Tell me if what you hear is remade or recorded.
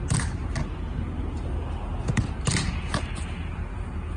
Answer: recorded